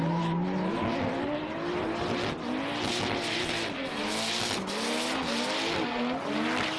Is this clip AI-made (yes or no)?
no